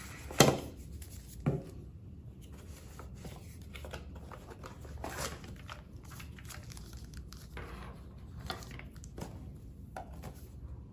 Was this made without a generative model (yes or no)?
yes